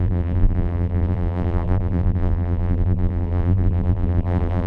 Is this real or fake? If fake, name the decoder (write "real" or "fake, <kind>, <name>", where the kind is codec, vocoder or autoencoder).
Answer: fake, vocoder, BigVGAN v2